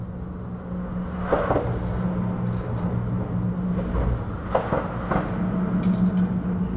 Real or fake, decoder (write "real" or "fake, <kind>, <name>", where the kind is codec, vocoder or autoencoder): real